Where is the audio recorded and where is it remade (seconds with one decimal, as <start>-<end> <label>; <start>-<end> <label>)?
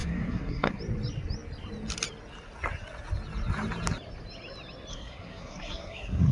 0.0-0.8 remade; 0.8-4.9 recorded; 4.9-6.3 remade